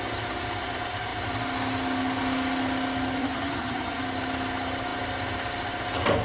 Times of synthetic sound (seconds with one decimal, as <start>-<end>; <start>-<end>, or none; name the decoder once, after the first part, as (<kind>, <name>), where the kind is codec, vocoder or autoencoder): 3.2-4.0 (vocoder, HiFi-GAN)